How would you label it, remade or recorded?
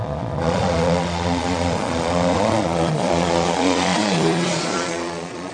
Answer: remade